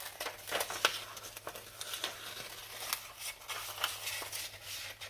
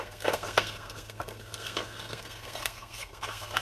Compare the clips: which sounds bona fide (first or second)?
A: first